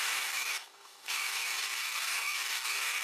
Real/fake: fake